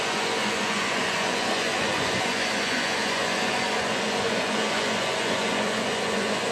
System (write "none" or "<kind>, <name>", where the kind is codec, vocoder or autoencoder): vocoder, Vocos